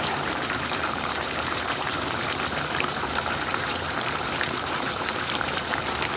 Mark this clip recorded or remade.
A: remade